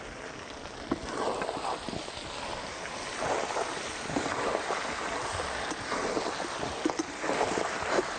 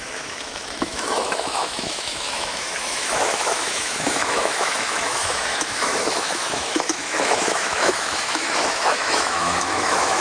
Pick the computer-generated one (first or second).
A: second